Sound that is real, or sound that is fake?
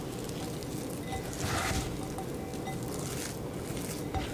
real